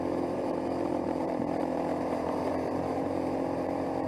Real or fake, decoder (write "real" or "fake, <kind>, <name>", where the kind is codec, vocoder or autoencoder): fake, vocoder, BigVGAN v2